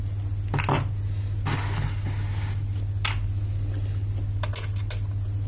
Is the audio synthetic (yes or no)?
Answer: no